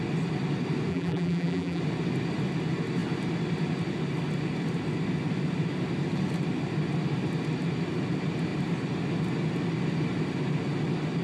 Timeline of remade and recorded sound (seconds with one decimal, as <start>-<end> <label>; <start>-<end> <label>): 0.0-0.9 recorded; 0.9-1.8 remade; 1.8-11.2 recorded

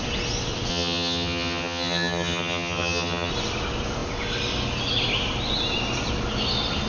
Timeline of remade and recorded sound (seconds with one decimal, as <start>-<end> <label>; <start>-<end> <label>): 0.0-0.7 recorded; 0.7-3.3 remade; 3.3-6.9 recorded

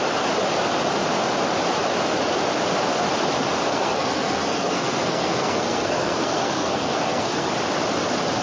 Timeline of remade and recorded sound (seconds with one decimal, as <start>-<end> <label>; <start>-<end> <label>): 0.0-3.7 recorded; 3.7-7.5 remade; 7.5-8.4 recorded

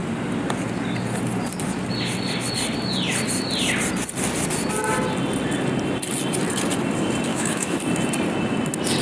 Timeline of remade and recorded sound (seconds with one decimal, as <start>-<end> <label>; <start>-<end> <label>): 0.0-7.3 recorded; 7.3-7.8 remade; 7.8-9.0 recorded

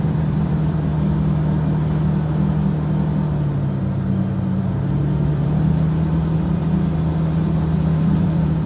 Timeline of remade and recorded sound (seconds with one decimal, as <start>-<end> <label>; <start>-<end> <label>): 0.0-0.9 remade; 0.9-5.3 recorded; 5.3-6.6 remade; 6.6-8.0 recorded; 8.0-8.7 remade

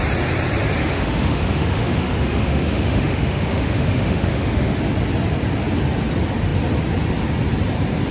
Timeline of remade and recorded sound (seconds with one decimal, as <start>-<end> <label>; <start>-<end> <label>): 0.0-0.8 recorded; 0.8-4.8 remade; 4.8-8.1 recorded

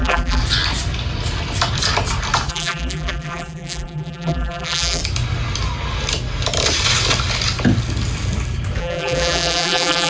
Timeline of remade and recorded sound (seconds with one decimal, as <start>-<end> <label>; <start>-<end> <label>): 0.0-0.4 remade; 0.4-2.5 recorded; 2.5-5.0 remade; 5.0-8.8 recorded; 8.8-10.1 remade

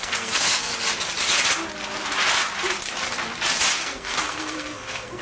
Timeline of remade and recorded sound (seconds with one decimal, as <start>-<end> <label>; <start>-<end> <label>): 0.0-0.7 remade; 0.7-3.8 recorded; 3.8-5.2 remade